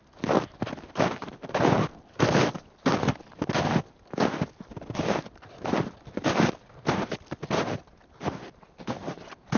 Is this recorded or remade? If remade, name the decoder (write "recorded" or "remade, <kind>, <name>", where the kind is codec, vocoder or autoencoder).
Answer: recorded